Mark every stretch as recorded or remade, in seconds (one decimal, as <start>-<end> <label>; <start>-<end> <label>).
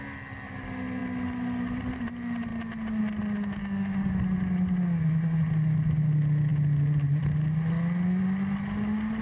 0.0-3.6 recorded; 3.6-4.1 remade; 4.1-9.2 recorded